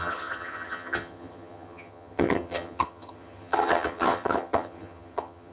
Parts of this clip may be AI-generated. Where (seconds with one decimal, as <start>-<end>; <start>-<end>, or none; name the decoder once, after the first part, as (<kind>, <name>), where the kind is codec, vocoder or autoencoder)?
0.0-5.5 (vocoder, HiFi-GAN)